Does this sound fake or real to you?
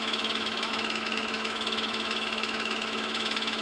fake